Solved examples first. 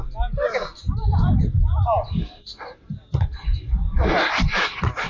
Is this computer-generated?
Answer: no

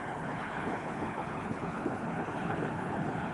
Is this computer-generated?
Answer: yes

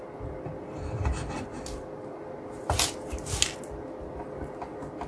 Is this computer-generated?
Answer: no